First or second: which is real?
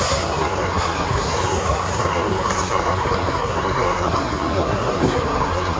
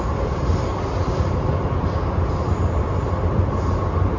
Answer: second